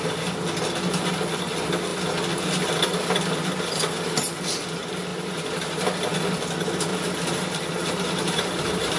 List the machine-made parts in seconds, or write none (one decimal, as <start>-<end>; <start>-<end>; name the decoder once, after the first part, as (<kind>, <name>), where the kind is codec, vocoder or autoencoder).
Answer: 5.1-5.7 (vocoder, BigVGAN v2); 6.9-9.0